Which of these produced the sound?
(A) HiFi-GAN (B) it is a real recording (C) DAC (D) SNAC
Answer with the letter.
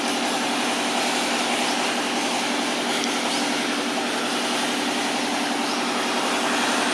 B